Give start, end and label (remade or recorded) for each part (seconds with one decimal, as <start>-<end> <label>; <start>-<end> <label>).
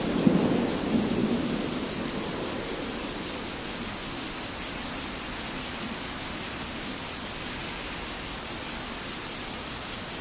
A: 0.0-10.2 recorded